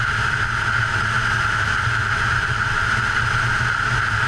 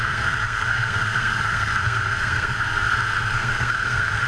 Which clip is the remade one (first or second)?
second